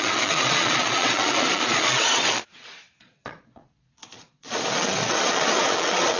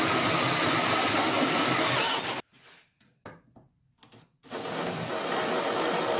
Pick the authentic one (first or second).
second